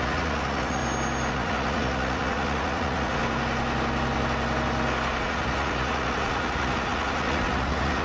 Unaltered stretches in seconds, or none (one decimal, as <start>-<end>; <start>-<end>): 0.8-1.3; 3.2-5.2

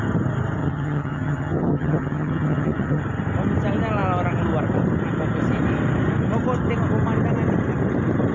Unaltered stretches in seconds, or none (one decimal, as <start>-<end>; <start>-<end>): 0.0-0.6; 3.0-8.3

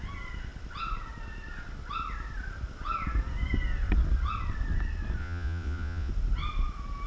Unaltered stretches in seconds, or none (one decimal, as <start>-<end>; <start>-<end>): 0.0-5.2; 6.1-7.1

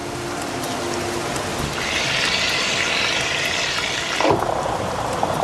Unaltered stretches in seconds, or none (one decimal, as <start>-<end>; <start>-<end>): 0.0-5.4

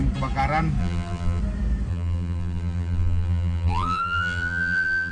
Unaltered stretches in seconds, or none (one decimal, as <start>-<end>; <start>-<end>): 0.0-0.8; 1.4-1.9

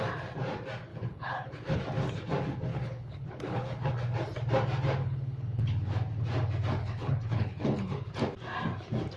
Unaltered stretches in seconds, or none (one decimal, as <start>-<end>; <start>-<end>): 0.0-0.9; 1.8-2.7; 3.9-5.0; 5.9-6.8; 8.1-9.2

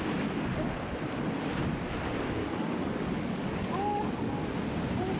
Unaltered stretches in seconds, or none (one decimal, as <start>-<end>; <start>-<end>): 0.0-2.4; 4.3-5.2